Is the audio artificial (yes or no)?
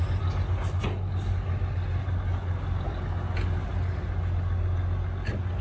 no